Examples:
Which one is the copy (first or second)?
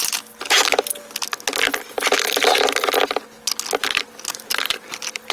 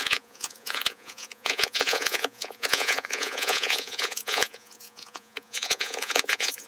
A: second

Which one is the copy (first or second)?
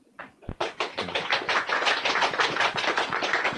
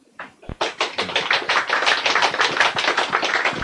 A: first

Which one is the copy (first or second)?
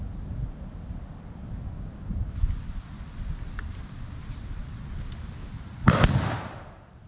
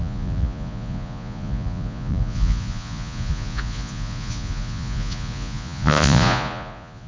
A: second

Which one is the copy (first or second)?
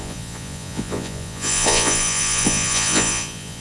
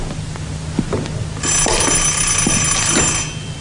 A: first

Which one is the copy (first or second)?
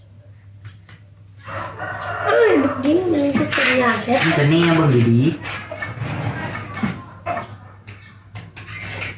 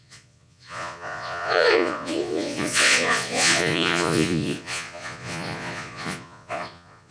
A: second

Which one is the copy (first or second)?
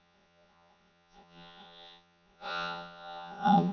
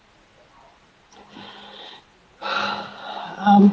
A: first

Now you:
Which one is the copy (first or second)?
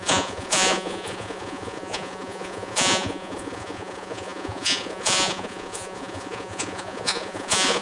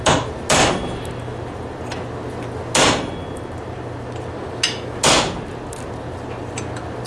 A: first